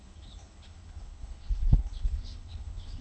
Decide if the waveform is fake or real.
fake